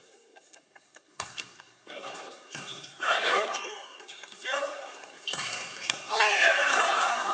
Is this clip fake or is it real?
fake